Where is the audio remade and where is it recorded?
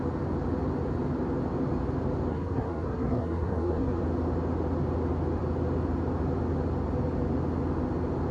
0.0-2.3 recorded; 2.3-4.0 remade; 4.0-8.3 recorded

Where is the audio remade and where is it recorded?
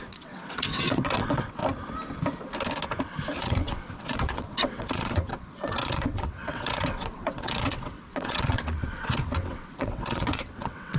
0.0-1.6 remade; 1.6-3.4 recorded; 3.4-11.0 remade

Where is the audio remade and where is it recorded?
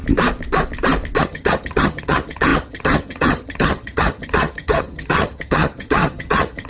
0.0-1.2 recorded; 1.2-6.7 remade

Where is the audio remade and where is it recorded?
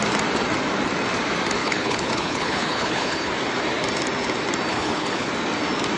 0.0-1.6 recorded; 1.6-3.3 remade; 3.3-4.7 recorded; 4.7-5.3 remade; 5.3-6.0 recorded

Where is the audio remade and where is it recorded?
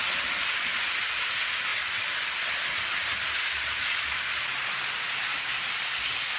0.0-6.4 recorded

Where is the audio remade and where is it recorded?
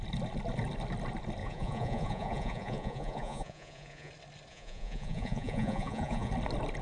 0.0-1.4 recorded; 1.4-4.1 remade; 4.1-4.5 recorded; 4.5-6.3 remade; 6.3-6.8 recorded